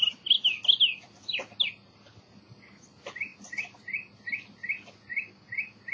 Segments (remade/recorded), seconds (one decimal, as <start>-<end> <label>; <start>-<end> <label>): 0.0-5.9 recorded